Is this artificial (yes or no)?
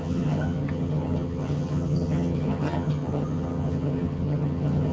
yes